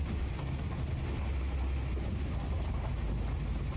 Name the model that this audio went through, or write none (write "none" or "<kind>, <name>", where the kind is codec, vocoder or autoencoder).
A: none